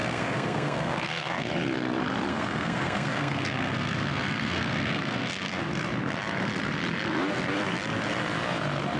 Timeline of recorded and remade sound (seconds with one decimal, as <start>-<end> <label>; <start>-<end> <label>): 0.0-1.5 remade; 1.5-2.3 recorded; 2.3-5.6 remade; 5.6-9.0 recorded

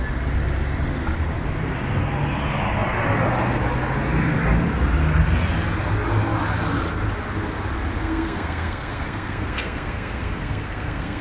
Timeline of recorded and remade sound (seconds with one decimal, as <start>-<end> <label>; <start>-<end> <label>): 0.0-8.0 recorded; 8.0-11.2 remade

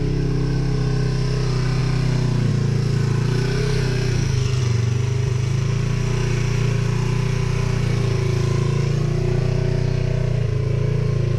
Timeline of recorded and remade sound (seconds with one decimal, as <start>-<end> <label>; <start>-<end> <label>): 0.0-3.6 recorded; 3.6-4.6 remade; 4.6-11.4 recorded

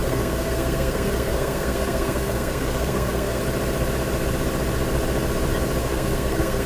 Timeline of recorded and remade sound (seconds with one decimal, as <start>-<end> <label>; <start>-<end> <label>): 0.0-3.4 remade; 3.4-5.8 recorded; 5.8-6.7 remade

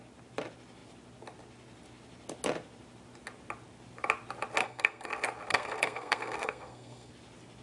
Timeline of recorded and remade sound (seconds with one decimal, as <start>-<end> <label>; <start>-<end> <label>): 0.0-4.6 recorded; 4.6-5.1 remade; 5.1-5.5 recorded; 5.5-7.1 remade; 7.1-7.6 recorded